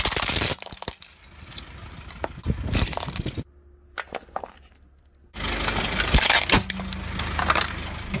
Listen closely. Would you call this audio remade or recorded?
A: recorded